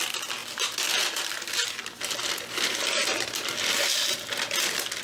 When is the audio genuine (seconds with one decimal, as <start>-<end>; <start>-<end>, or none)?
0.0-0.4; 1.5-5.0